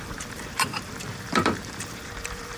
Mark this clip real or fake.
fake